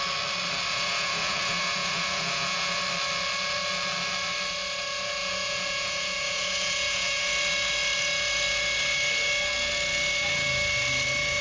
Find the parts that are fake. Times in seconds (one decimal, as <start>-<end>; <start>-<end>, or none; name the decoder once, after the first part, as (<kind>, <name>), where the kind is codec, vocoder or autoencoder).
0.7-2.8 (vocoder, Vocos); 5.2-7.2